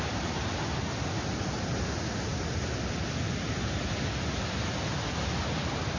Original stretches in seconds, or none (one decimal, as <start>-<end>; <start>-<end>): 0.0-6.0